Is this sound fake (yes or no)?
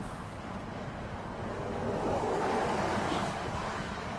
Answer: yes